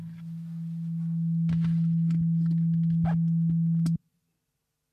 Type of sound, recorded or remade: recorded